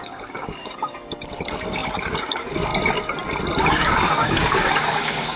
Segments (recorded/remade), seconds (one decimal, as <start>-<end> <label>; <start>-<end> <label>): 0.0-2.7 remade; 2.7-3.7 recorded; 3.7-5.4 remade